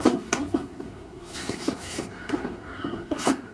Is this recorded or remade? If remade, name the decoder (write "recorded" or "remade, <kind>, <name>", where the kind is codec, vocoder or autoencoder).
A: remade, codec, SNAC